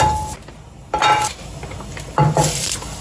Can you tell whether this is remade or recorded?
recorded